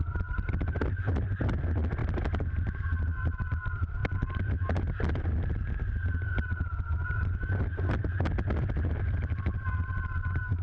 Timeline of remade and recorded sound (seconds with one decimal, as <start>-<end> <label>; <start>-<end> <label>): 0.0-2.0 recorded; 2.0-2.9 remade; 2.9-10.6 recorded